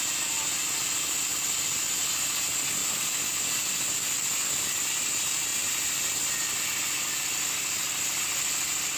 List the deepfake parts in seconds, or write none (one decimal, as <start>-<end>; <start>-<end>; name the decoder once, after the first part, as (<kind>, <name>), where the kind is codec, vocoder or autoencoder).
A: 1.3-2.0 (vocoder, BigVGAN v2); 2.8-4.9; 5.5-6.6